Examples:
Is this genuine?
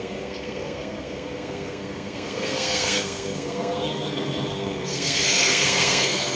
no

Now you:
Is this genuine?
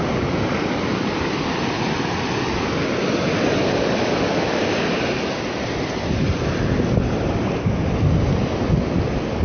yes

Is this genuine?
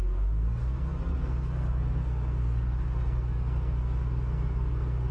no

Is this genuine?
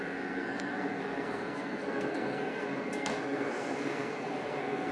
no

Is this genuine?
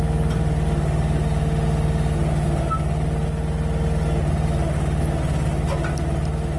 yes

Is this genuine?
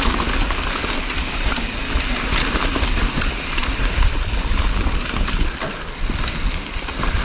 yes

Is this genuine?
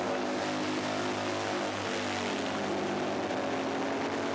yes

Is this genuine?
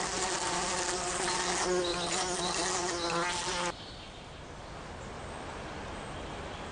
yes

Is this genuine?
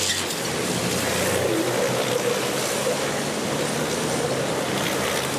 yes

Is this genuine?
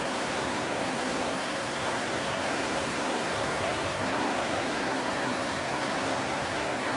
no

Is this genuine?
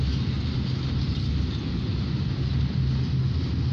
yes